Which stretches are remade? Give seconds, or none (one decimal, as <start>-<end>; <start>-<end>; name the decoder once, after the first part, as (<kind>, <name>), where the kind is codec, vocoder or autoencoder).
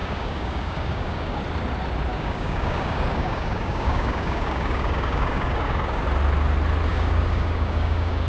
0.0-1.4 (codec, DAC); 2.1-6.0; 6.9-8.3